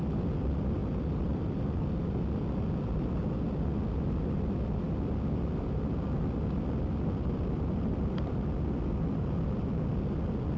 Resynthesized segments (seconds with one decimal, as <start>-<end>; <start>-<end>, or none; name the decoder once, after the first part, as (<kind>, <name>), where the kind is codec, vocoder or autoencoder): none